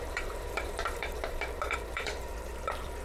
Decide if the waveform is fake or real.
fake